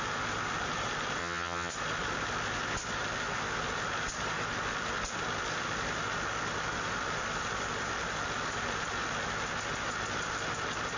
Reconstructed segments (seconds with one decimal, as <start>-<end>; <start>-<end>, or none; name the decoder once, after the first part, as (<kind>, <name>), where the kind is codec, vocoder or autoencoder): 1.2-1.7 (vocoder, HiFi-GAN)